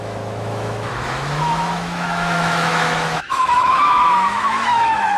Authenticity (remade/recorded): remade